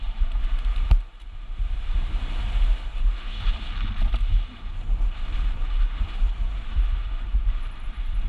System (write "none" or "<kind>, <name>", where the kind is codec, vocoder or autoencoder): vocoder, BigVGAN v2